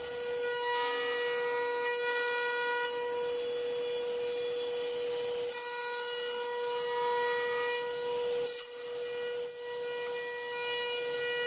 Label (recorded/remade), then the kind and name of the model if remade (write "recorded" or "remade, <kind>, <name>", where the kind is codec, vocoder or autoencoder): recorded